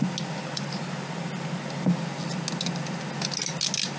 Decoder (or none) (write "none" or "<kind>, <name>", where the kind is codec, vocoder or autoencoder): none